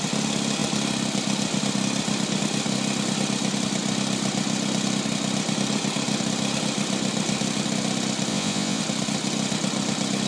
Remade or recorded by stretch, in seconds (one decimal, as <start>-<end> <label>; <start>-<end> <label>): 0.0-8.3 recorded; 8.3-8.8 remade; 8.8-10.3 recorded